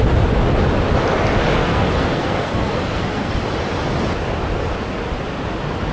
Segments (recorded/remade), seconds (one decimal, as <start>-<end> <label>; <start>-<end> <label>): 0.0-1.6 recorded; 1.6-3.3 remade; 3.3-5.9 recorded